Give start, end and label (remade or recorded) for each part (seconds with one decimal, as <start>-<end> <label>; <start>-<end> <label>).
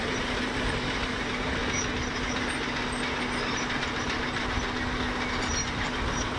0.0-1.6 remade; 1.6-5.4 recorded; 5.4-6.4 remade